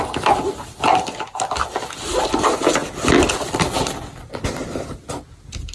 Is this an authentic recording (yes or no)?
yes